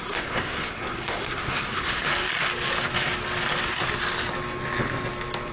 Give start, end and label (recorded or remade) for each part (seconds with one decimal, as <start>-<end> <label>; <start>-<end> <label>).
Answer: 0.0-2.1 remade; 2.1-5.5 recorded